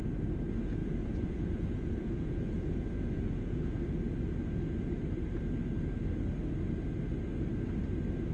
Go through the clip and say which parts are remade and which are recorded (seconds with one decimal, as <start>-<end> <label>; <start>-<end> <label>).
0.0-0.8 recorded; 0.8-4.0 remade; 4.0-8.3 recorded